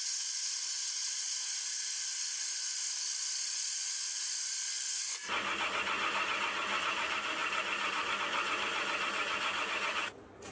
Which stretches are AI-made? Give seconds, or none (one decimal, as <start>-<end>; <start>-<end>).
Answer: none